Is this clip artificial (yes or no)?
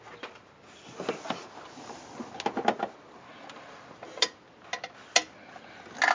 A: no